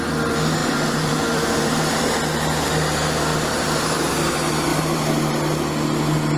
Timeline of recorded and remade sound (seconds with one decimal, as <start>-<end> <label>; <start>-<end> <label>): 0.0-0.6 recorded; 0.6-2.1 remade; 2.1-3.3 recorded; 3.3-4.1 remade; 4.1-4.7 recorded; 4.7-5.3 remade; 5.3-6.4 recorded